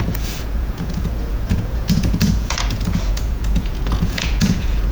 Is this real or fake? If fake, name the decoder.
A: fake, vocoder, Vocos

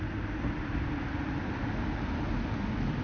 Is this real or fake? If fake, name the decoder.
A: real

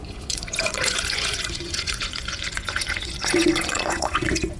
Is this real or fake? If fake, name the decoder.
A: fake, vocoder, Vocos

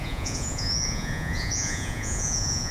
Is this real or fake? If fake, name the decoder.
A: fake, vocoder, Vocos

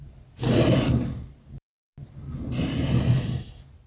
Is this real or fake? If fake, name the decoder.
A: real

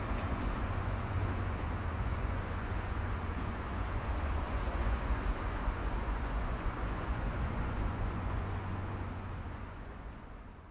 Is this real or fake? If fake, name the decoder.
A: fake, vocoder, Vocos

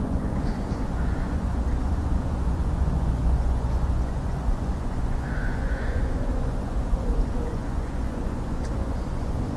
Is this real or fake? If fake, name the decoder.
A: fake, vocoder, Vocos